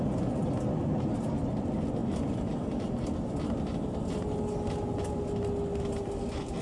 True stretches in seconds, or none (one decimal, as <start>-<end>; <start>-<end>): 0.0-6.6